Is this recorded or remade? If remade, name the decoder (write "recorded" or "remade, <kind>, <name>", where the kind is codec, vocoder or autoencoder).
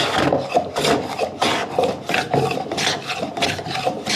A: recorded